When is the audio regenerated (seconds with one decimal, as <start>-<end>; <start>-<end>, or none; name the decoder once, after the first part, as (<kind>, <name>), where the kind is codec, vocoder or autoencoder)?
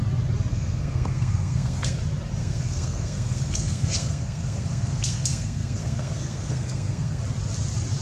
0.5-2.0 (codec, SNAC); 2.4-7.2